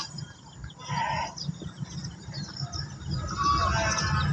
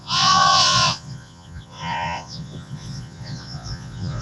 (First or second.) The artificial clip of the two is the second